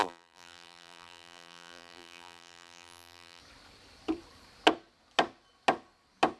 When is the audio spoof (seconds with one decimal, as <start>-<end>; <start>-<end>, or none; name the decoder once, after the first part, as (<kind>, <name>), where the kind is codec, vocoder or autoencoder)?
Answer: 0.0-3.4 (vocoder, BigVGAN v2)